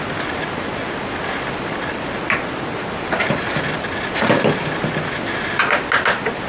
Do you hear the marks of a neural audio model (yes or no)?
no